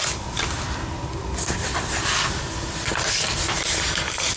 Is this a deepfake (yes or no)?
no